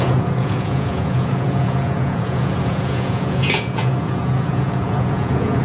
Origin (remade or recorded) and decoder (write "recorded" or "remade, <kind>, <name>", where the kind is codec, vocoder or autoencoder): remade, vocoder, Vocos